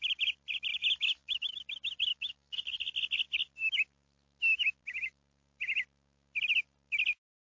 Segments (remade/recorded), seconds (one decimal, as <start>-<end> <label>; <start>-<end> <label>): 0.0-0.7 recorded; 0.7-1.5 remade; 1.5-2.1 recorded; 2.1-2.8 remade; 2.8-7.4 recorded